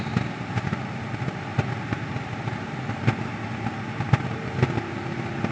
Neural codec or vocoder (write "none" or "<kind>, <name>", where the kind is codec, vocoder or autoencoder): none